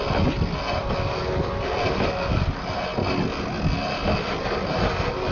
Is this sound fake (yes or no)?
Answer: no